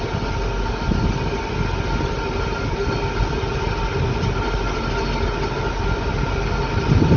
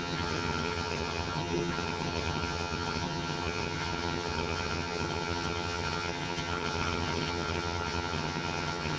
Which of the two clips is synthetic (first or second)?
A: second